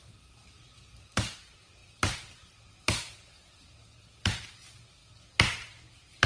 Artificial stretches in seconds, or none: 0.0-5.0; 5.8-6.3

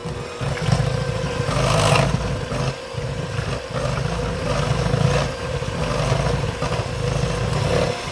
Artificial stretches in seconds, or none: none

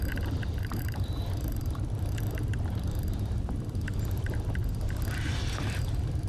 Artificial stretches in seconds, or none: 0.0-4.6

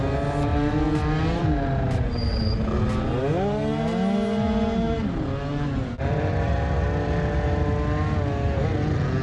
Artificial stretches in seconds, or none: none